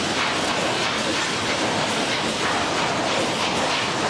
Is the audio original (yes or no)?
yes